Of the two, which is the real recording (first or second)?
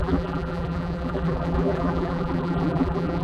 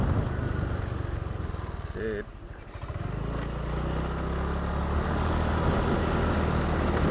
second